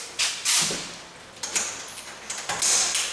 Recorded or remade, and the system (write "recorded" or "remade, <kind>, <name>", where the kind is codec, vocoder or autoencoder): recorded